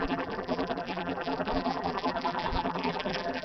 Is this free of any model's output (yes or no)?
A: no